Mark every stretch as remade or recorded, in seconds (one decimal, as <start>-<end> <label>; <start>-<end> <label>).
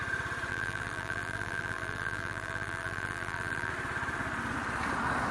0.0-0.5 recorded; 0.5-3.7 remade; 3.7-5.3 recorded